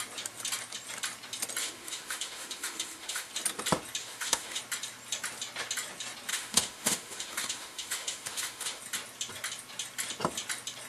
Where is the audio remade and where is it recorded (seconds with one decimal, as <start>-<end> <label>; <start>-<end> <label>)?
0.0-1.6 recorded; 1.6-3.3 remade; 3.3-4.0 recorded; 4.0-4.6 remade; 4.6-6.3 recorded; 6.3-8.8 remade; 8.8-10.9 recorded